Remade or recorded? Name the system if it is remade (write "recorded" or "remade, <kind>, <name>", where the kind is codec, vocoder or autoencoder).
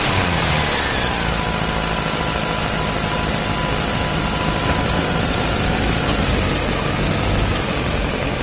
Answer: recorded